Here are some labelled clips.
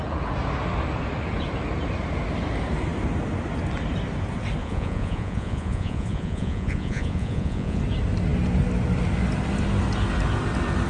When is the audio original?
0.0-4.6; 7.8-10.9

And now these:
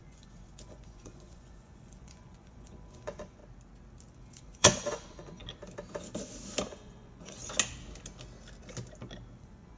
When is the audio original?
3.4-4.1; 5.4-6.7; 7.4-9.4

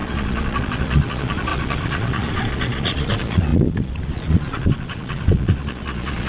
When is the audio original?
none

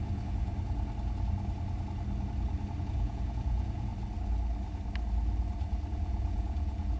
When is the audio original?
0.5-2.8; 3.9-5.9